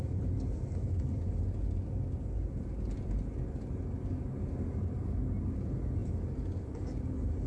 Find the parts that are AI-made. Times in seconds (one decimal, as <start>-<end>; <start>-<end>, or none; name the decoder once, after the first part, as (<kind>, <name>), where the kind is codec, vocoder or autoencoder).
none